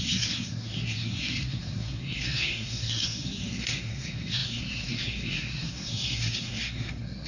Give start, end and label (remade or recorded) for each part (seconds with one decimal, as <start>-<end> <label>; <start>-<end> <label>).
0.0-7.3 remade

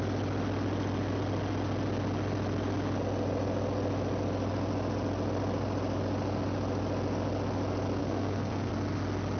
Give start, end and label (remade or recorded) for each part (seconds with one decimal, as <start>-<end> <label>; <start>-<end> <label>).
0.0-8.0 recorded; 8.0-8.7 remade; 8.7-9.4 recorded